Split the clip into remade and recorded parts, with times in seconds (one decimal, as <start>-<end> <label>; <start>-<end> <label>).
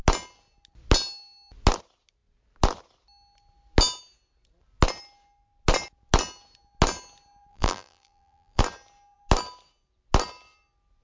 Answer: 0.0-7.5 recorded; 7.5-8.6 remade; 8.6-11.0 recorded